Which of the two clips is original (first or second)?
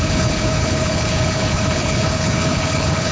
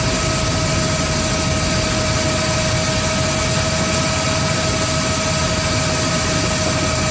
second